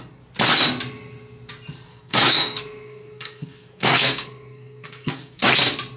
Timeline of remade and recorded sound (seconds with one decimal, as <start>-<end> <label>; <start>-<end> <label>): 0.0-1.9 recorded; 1.9-5.5 remade; 5.5-6.0 recorded